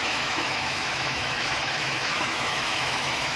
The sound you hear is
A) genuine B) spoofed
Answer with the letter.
B